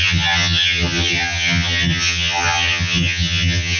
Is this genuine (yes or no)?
no